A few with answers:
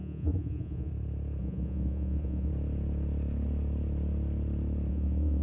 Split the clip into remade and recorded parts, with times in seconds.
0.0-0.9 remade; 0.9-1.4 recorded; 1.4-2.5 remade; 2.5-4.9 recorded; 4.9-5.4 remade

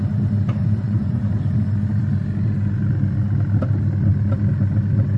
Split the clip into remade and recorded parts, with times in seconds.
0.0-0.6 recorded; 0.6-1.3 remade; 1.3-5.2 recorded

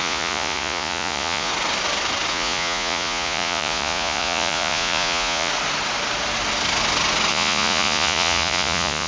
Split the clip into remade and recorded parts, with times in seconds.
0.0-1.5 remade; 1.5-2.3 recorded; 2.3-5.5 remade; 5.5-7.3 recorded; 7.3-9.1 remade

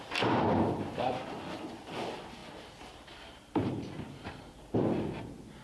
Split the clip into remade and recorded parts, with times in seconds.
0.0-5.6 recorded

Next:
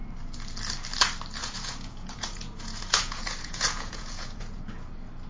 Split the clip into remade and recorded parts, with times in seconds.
0.0-1.4 recorded; 1.4-4.6 remade; 4.6-5.3 recorded

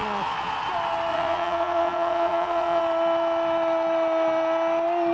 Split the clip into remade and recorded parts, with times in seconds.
0.0-0.6 remade; 0.6-1.1 recorded; 1.1-2.8 remade; 2.8-5.1 recorded